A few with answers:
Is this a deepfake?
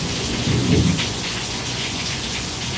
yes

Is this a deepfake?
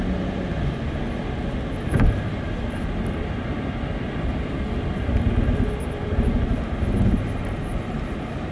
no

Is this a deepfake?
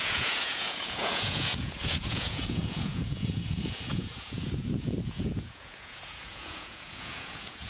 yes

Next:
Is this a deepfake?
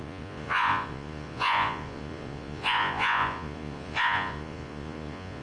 yes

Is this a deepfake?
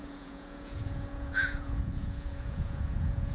yes